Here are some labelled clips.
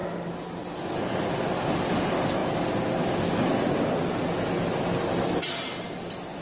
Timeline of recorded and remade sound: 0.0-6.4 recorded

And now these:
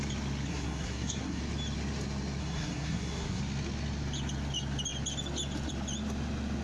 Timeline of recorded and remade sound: 0.0-0.5 recorded; 0.5-1.4 remade; 1.4-2.4 recorded; 2.4-3.4 remade; 3.4-6.6 recorded

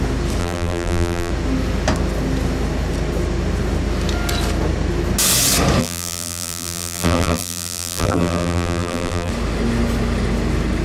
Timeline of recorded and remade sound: 0.0-0.4 recorded; 0.4-1.3 remade; 1.3-5.8 recorded; 5.8-9.3 remade; 9.3-10.8 recorded

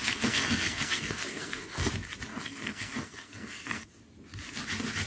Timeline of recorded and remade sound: 0.0-1.9 remade; 1.9-2.3 recorded; 2.3-3.9 remade; 3.9-5.1 recorded

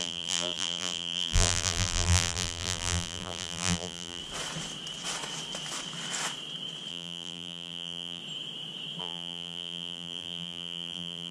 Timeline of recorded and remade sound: 0.0-4.2 remade; 4.2-6.9 recorded; 6.9-8.2 remade; 8.2-9.0 recorded; 9.0-11.3 remade

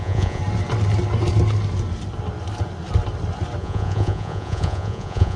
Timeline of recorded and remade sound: 0.0-0.4 remade; 0.4-3.6 recorded; 3.6-5.4 remade